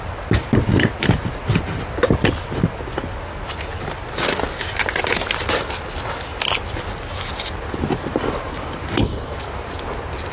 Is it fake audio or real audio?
real